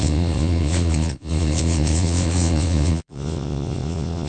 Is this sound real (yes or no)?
no